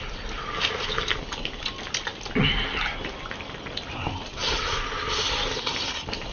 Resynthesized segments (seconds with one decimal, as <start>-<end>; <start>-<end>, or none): none

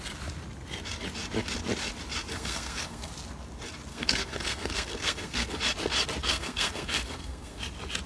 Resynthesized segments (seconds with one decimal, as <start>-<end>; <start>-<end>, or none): 2.3-3.1; 3.9-5.6; 6.2-7.6

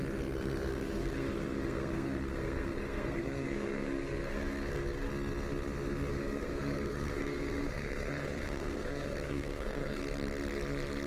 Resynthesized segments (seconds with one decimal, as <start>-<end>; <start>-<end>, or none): 0.7-5.1; 6.1-10.0